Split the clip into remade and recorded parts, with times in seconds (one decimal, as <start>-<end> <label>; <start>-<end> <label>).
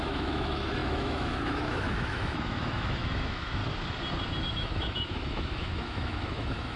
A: 0.0-3.6 remade; 3.6-4.4 recorded; 4.4-6.8 remade